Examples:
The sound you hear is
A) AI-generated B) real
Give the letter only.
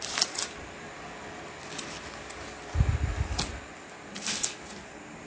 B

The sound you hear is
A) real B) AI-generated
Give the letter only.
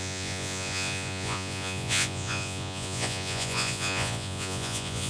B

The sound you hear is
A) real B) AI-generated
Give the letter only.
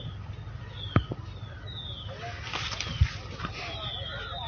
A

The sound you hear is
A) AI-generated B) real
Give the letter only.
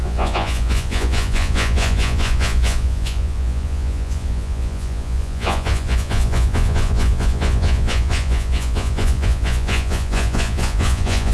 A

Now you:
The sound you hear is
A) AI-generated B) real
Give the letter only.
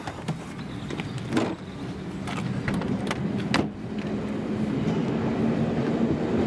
B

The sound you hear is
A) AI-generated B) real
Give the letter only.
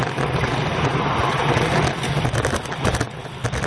B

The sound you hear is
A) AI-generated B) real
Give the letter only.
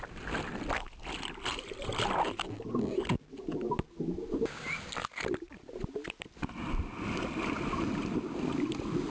B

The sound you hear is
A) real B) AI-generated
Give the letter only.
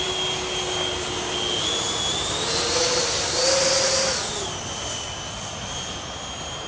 A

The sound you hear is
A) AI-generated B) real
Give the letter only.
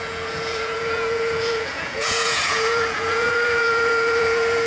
A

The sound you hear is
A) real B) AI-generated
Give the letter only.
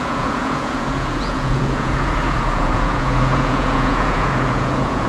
B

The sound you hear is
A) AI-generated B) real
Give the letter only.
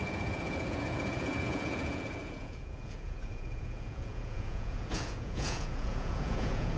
A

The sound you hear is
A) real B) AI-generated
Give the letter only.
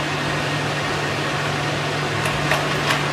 A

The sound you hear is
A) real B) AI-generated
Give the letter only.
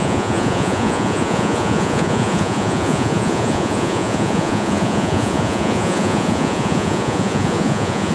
B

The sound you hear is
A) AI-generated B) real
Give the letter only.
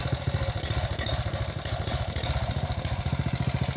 B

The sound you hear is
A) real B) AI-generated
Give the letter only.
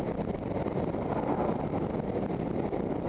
A